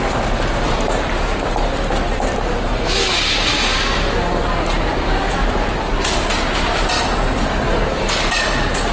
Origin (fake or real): real